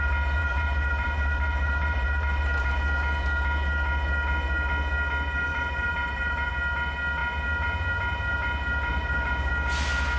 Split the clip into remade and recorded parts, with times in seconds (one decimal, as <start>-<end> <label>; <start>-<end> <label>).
0.0-0.4 recorded; 0.4-2.7 remade; 2.7-5.5 recorded; 5.5-6.5 remade; 6.5-8.9 recorded; 8.9-9.5 remade; 9.5-10.2 recorded